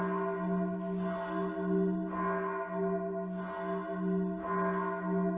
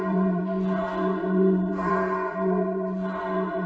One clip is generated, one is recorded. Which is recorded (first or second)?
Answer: first